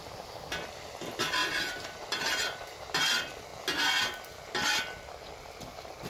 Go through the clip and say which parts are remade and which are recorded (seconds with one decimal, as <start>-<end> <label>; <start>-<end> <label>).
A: 0.0-1.4 recorded; 1.4-3.0 remade; 3.0-6.1 recorded